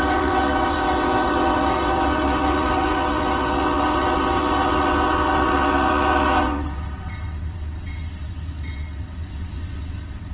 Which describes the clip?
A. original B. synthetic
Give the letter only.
B